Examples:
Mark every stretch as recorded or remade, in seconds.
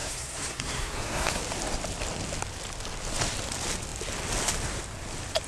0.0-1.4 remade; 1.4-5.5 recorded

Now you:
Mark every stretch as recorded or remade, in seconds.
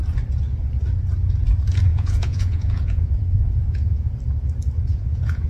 0.0-1.9 recorded; 1.9-4.1 remade; 4.1-4.9 recorded; 4.9-5.5 remade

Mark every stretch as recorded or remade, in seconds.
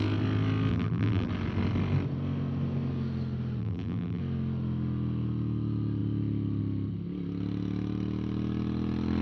0.0-0.7 recorded; 0.7-1.3 remade; 1.3-3.6 recorded; 3.6-4.2 remade; 4.2-9.2 recorded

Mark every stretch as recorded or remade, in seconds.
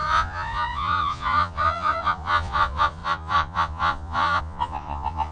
0.0-5.3 remade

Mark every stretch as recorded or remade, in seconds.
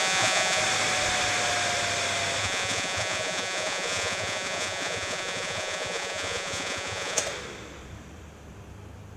0.0-0.6 remade; 0.6-2.4 recorded; 2.4-7.2 remade; 7.2-9.2 recorded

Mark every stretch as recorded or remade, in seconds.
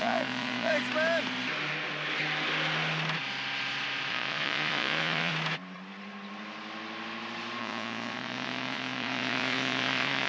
0.0-0.7 remade; 0.7-4.1 recorded; 4.1-5.3 remade; 5.3-7.6 recorded; 7.6-10.3 remade